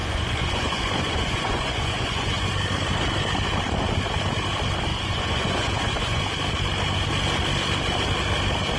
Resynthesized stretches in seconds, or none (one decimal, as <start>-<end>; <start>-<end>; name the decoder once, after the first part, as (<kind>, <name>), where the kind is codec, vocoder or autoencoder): 0.0-2.5 (vocoder, Vocos); 4.9-6.2